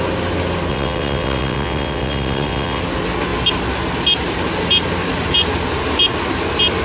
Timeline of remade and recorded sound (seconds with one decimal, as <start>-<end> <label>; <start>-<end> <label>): 0.0-0.7 recorded; 0.7-2.8 remade; 2.8-6.8 recorded